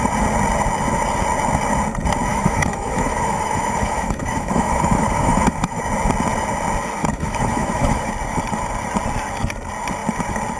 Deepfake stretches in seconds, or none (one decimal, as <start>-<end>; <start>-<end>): 2.3-5.8; 7.0-8.1